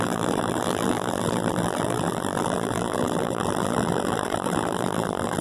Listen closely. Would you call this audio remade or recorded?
remade